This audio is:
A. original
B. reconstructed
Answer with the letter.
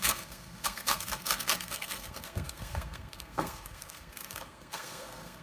B